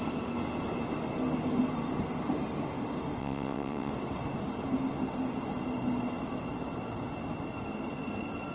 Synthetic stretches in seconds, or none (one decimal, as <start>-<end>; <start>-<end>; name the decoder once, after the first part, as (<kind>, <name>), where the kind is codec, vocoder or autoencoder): 3.2-3.9 (vocoder, WaveNeXt)